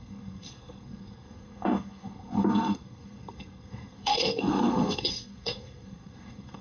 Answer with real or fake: fake